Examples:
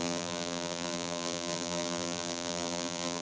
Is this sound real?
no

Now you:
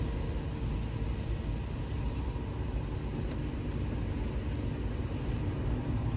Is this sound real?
yes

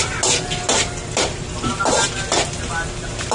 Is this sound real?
yes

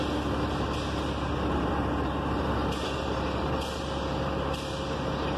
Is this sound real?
no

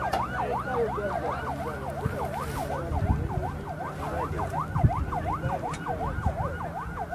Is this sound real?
yes